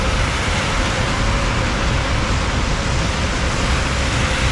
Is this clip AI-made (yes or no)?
no